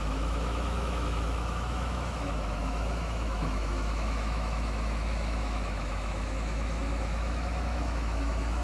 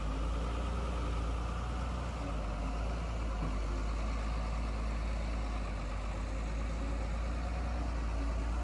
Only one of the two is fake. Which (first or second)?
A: first